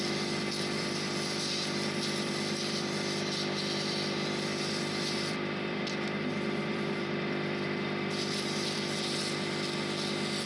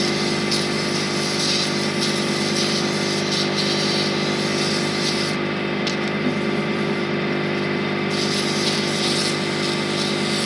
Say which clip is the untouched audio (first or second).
second